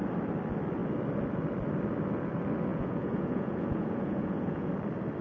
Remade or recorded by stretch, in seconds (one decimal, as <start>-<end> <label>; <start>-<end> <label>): 0.0-2.7 recorded; 2.7-4.7 remade; 4.7-5.2 recorded